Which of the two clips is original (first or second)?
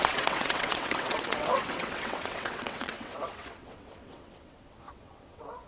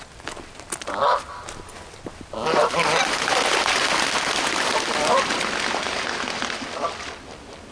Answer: second